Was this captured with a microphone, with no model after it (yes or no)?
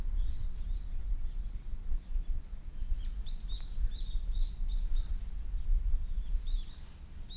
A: yes